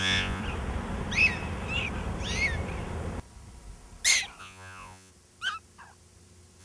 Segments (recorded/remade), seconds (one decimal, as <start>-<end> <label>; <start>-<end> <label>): 0.0-0.4 remade; 0.4-4.4 recorded; 4.4-5.1 remade; 5.1-6.6 recorded